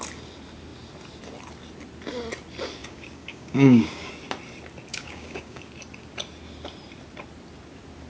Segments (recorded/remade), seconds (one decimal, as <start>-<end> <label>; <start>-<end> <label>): 0.0-2.8 recorded; 2.8-4.1 remade; 4.1-4.9 recorded; 4.9-5.6 remade; 5.6-8.1 recorded